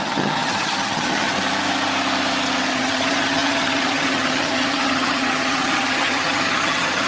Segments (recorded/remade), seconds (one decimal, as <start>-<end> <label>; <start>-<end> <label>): 0.0-1.3 remade; 1.3-2.7 recorded; 2.7-7.1 remade

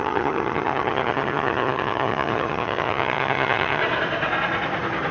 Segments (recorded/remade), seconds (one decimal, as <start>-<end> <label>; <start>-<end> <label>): 0.0-3.8 remade; 3.8-5.1 recorded

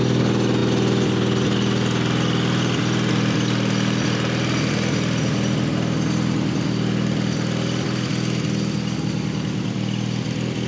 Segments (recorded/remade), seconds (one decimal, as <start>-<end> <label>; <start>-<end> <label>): 0.0-10.7 recorded

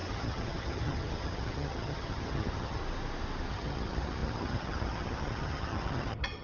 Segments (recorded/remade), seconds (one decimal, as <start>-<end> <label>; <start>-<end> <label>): 0.0-2.8 remade; 2.8-3.5 recorded; 3.5-6.4 remade